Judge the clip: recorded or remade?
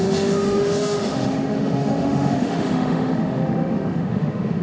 remade